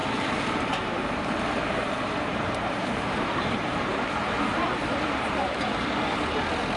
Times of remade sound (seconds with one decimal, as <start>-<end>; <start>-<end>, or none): 0.0-4.1; 4.8-5.9